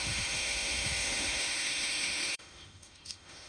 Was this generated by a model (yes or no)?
yes